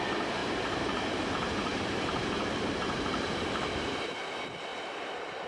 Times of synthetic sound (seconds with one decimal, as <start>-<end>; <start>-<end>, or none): 0.4-1.1; 1.7-4.2